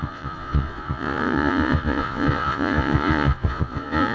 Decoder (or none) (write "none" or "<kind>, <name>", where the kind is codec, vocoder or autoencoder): vocoder, Vocos